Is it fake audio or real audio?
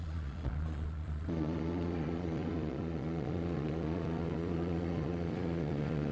fake